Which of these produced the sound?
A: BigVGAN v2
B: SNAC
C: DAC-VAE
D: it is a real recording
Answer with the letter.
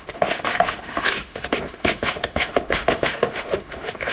C